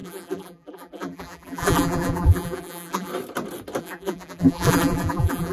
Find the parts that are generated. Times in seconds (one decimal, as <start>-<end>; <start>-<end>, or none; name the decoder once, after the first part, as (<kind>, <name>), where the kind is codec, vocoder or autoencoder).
0.0-3.1 (vocoder, BigVGAN v2); 3.8-5.5